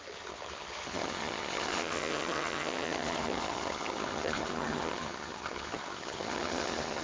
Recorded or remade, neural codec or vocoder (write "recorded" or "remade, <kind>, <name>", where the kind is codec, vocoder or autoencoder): remade, vocoder, HiFi-GAN